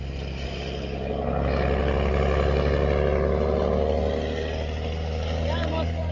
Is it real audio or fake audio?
real